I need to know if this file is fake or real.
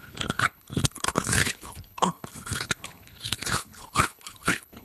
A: fake